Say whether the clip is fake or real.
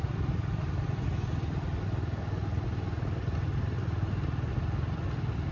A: real